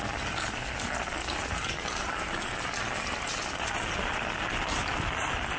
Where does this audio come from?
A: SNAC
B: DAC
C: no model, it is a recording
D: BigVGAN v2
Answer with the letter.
C